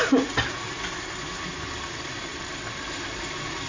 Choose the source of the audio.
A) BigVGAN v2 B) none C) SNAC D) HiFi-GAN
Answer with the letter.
B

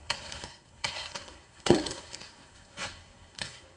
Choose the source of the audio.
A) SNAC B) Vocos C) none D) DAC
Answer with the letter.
A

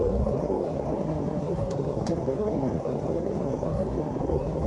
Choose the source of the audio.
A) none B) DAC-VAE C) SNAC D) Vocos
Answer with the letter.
C